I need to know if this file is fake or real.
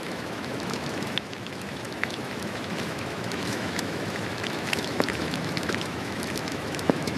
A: fake